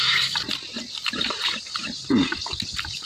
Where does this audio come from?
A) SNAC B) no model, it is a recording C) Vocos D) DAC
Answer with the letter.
B